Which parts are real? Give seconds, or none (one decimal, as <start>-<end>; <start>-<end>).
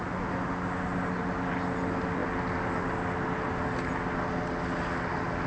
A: 0.0-5.5